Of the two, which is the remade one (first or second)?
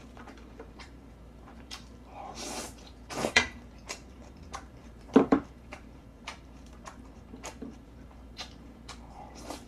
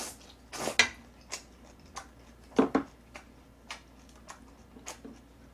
first